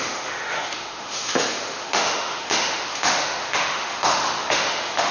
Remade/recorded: remade